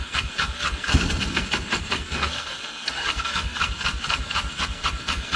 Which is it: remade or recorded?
remade